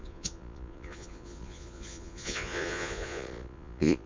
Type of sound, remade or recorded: remade